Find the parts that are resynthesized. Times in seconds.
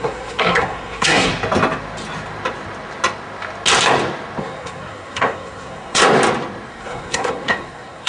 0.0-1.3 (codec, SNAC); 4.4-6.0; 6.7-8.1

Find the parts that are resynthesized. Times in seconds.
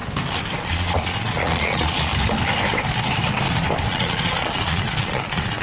0.6-2.1 (vocoder, Vocos); 3.8-5.6